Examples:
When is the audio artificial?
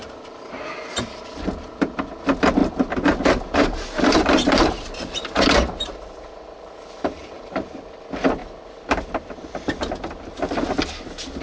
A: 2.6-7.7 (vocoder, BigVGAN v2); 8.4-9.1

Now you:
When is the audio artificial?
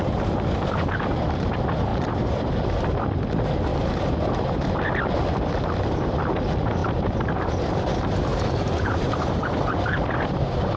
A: 1.9-2.5 (vocoder, BigVGAN v2); 3.7-4.7; 6.8-7.4; 8.3-10.8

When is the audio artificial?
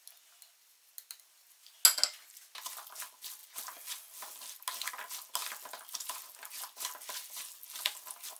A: none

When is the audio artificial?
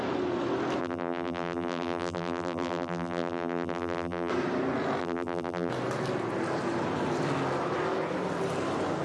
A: 0.8-4.3 (vocoder, BigVGAN v2); 5.0-5.7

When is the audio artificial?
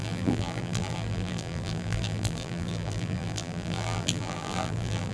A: 0.0-5.1 (vocoder, BigVGAN v2)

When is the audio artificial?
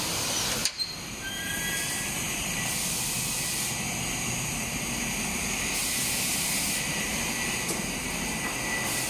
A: 0.6-2.6 (vocoder, BigVGAN v2); 5.8-7.1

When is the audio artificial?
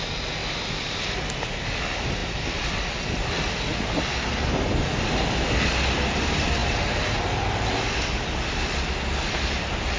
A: 0.4-1.8 (vocoder, BigVGAN v2); 2.2-2.8